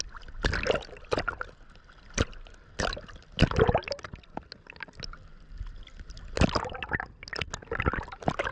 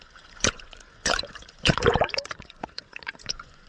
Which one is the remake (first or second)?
second